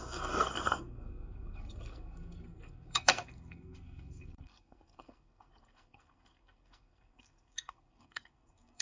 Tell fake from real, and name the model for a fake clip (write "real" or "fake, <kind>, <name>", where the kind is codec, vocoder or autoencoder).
fake, codec, SNAC